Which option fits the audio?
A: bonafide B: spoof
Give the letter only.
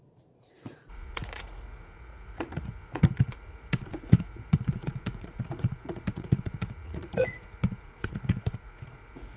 B